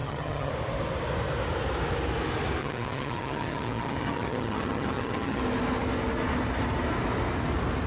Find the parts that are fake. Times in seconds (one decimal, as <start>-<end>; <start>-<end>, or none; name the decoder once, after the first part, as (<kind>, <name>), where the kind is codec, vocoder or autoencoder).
0.0-0.5 (vocoder, HiFi-GAN); 2.6-5.4